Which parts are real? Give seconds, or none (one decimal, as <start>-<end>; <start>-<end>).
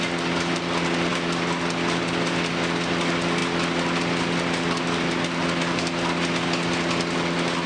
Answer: 0.0-7.7